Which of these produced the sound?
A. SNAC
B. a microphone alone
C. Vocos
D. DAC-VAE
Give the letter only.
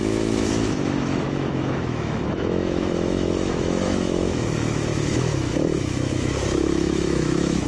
D